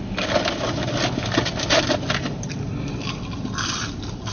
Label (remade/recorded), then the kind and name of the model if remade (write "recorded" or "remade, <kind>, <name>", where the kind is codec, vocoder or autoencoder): remade, vocoder, BigVGAN v2